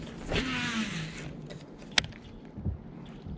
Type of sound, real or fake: real